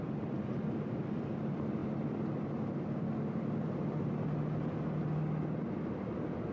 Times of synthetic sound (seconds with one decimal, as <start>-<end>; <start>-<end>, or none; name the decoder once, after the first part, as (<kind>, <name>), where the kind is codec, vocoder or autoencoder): none